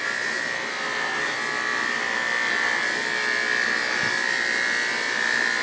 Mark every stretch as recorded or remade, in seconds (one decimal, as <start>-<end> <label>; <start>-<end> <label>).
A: 0.0-5.6 recorded